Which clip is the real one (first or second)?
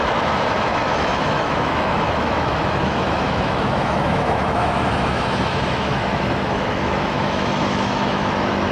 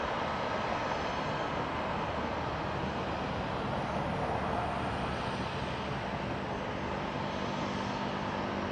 second